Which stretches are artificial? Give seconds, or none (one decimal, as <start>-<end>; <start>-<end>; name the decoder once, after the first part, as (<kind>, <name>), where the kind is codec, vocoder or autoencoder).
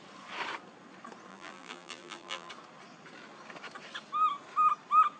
1.3-2.5 (vocoder, BigVGAN v2)